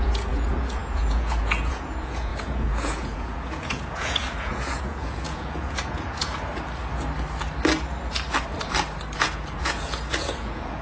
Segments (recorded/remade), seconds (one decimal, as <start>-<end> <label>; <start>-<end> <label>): 0.0-6.5 remade; 6.5-9.2 recorded; 9.2-10.8 remade